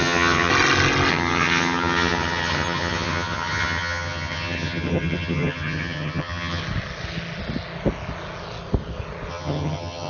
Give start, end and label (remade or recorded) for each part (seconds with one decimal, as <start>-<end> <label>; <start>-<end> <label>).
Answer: 0.0-0.5 remade; 0.5-1.1 recorded; 1.1-6.6 remade; 6.6-9.3 recorded; 9.3-10.1 remade